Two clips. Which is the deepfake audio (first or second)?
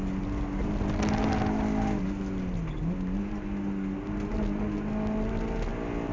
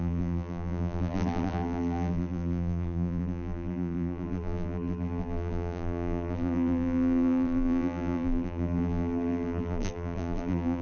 second